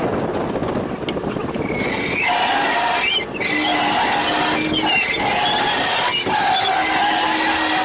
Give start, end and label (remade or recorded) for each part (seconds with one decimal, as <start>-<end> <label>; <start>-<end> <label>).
0.0-7.8 recorded